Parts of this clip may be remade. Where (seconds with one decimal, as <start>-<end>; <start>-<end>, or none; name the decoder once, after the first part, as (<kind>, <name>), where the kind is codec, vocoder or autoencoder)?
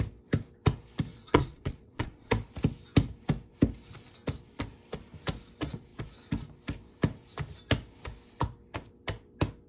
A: 1.1-2.3 (vocoder, Vocos)